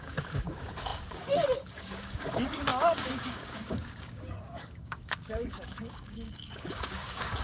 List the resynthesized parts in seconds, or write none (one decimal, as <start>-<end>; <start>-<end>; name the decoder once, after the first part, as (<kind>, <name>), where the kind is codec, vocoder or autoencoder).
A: 0.0-7.4 (codec, DAC)